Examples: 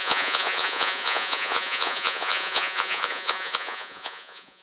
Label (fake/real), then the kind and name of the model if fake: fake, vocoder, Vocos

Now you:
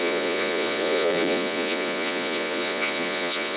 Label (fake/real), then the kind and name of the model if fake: fake, vocoder, Vocos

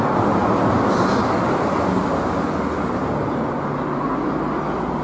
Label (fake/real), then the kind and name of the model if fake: real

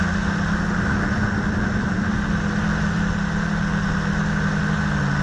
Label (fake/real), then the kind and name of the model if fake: real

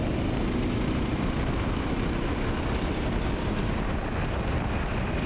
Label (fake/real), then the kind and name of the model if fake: real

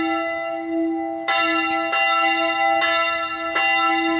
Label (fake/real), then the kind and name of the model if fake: real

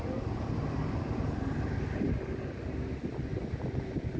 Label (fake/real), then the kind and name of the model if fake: real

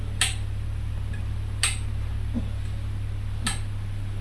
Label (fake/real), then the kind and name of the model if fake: real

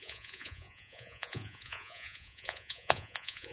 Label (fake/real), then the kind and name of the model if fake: fake, vocoder, Vocos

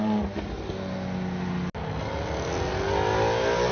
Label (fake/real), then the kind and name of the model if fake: real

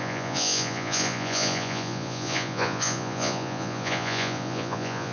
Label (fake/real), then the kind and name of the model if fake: fake, vocoder, Vocos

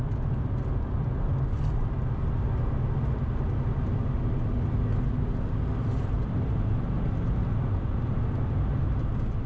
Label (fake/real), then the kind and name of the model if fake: real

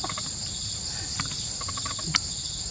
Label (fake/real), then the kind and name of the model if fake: real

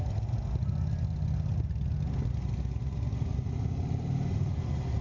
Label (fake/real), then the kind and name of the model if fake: real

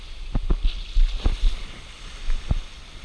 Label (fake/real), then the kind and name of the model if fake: real